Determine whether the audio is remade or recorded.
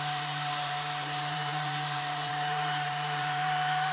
remade